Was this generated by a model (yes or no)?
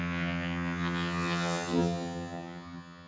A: yes